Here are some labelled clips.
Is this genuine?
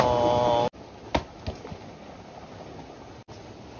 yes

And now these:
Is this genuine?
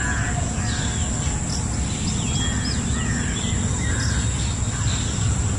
yes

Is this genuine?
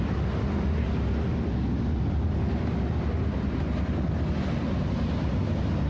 yes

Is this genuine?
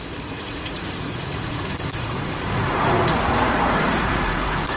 no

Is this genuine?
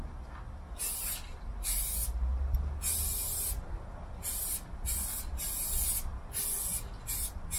yes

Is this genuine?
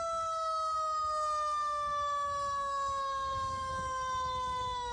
no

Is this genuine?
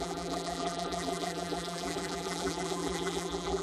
no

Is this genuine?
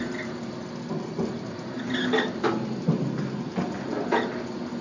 yes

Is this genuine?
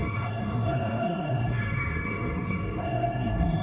no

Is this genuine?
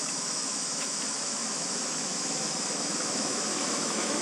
no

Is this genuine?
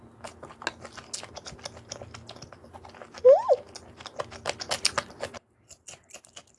yes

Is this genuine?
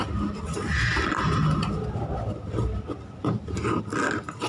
yes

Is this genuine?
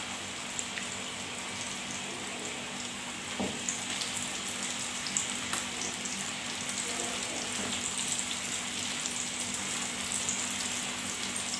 yes